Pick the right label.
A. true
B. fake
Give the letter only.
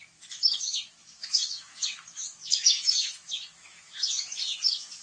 B